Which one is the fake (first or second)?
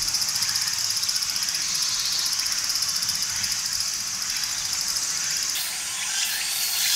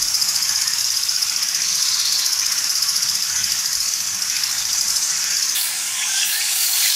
second